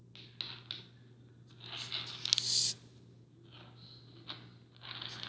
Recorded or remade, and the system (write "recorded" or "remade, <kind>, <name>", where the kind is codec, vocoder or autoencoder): recorded